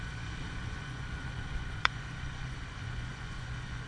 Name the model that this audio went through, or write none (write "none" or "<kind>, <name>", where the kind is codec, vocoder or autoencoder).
vocoder, Vocos